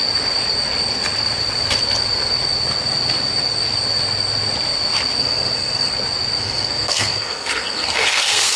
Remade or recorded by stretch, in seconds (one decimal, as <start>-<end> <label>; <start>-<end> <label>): 0.0-5.2 recorded; 5.2-5.9 remade; 5.9-6.4 recorded; 6.4-8.6 remade